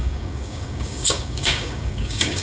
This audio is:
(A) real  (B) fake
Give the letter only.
B